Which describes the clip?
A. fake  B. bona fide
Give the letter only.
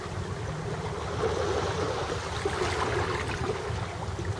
B